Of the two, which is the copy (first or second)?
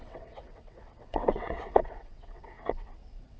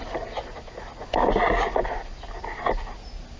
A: first